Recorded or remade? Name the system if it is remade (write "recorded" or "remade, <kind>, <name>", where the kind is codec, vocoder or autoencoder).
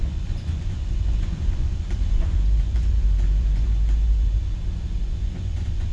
remade, vocoder, Vocos